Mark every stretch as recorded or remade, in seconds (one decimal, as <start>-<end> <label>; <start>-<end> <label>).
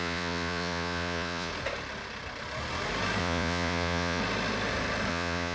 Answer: 0.0-1.5 remade; 1.5-3.2 recorded; 3.2-4.2 remade; 4.2-5.1 recorded; 5.1-5.5 remade